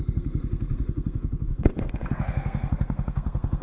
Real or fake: fake